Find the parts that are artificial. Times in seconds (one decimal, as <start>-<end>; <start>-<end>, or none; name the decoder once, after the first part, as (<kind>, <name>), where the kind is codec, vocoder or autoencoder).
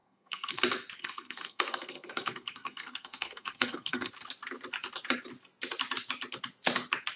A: 0.0-0.6 (codec, SNAC); 1.0-4.1